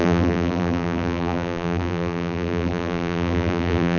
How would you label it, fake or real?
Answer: fake